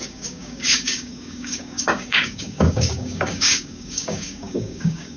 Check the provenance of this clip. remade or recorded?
remade